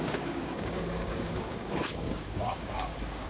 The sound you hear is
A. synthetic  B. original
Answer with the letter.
A